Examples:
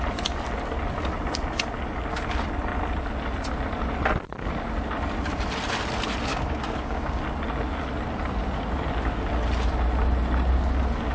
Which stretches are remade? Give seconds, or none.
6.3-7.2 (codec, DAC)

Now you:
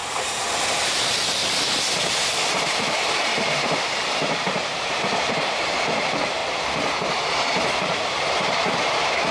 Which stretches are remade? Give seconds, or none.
0.0-6.4 (vocoder, BigVGAN v2); 7.1-9.3

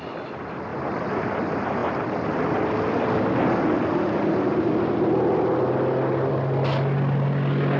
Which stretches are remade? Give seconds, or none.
none

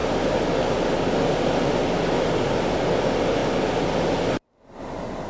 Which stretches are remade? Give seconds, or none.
none

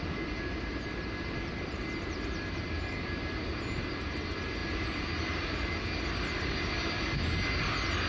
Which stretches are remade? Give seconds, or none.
none

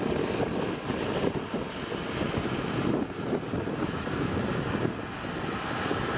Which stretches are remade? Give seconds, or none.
3.8-4.4 (codec, DAC)

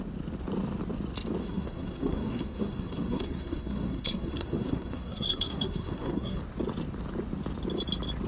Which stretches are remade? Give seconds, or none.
1.4-6.4 (codec, SNAC)